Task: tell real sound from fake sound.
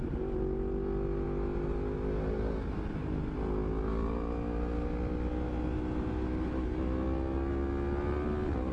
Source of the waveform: real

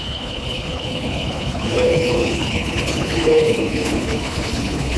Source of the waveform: fake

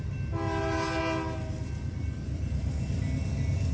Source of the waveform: real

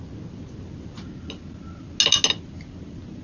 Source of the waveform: real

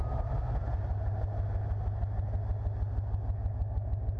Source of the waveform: real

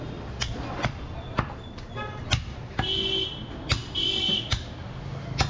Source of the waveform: real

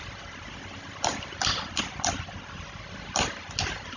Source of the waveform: real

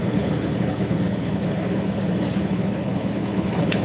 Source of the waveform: fake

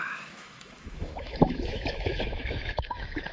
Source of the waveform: fake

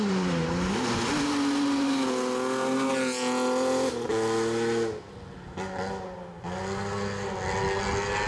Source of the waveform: real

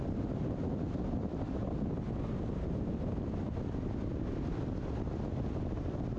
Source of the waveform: real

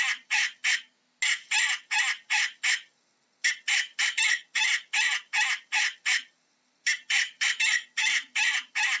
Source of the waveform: real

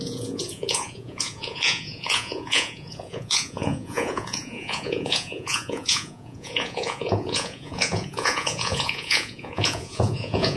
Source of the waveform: fake